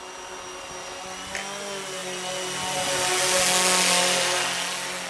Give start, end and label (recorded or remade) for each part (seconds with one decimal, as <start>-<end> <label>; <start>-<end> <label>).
0.0-5.1 recorded